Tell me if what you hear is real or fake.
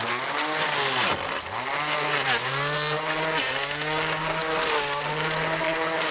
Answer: real